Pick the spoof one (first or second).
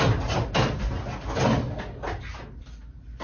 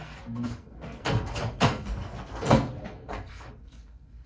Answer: second